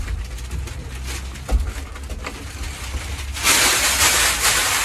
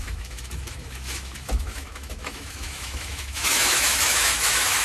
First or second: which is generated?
second